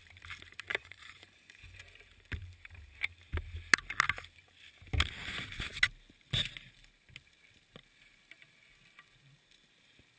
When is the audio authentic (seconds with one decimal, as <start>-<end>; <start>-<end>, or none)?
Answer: 0.0-0.7; 1.8-10.2